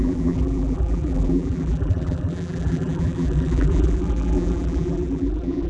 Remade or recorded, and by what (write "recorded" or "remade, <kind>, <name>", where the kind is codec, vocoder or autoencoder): remade, vocoder, BigVGAN v2